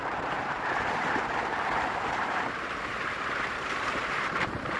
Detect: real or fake fake